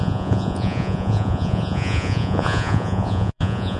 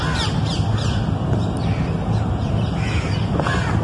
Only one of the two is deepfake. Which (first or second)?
first